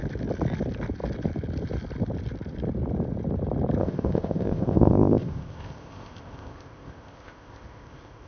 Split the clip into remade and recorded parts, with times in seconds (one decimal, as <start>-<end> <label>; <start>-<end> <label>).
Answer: 0.0-3.8 recorded; 3.8-8.3 remade